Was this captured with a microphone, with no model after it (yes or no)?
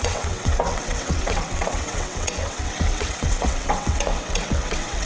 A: no